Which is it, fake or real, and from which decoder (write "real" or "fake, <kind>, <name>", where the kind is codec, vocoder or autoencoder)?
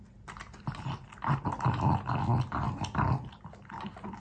real